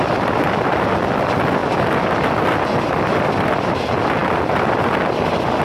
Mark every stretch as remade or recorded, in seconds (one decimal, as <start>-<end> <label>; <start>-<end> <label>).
0.0-5.6 recorded